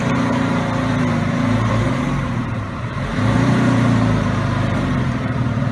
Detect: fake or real fake